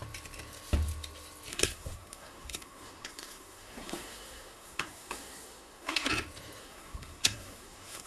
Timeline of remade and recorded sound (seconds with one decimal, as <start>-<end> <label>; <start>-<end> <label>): 0.0-1.5 recorded; 1.5-6.1 remade; 6.1-6.6 recorded; 6.6-8.1 remade